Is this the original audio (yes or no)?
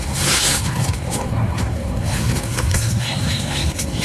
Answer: no